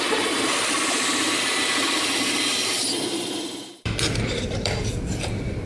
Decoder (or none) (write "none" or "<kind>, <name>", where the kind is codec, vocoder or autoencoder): vocoder, BigVGAN v2